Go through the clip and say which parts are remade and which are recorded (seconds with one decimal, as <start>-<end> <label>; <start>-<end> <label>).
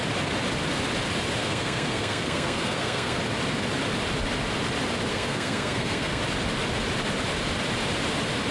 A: 0.0-1.4 recorded; 1.4-3.2 remade; 3.2-5.1 recorded; 5.1-6.2 remade; 6.2-8.5 recorded